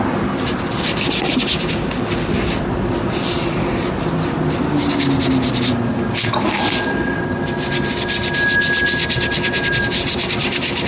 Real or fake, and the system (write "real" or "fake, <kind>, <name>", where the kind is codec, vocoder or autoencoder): real